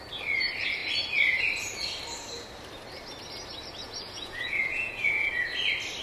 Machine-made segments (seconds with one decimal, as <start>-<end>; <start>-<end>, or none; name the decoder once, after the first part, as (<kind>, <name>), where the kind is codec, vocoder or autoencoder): 3.8-5.3 (vocoder, Vocos)